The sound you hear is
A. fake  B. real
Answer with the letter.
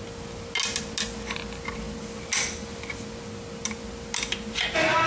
B